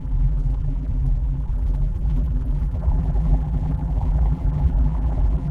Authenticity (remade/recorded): remade